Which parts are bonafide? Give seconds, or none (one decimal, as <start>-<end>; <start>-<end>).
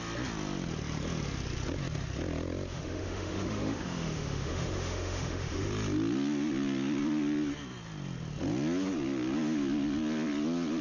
0.0-2.7; 5.7-10.8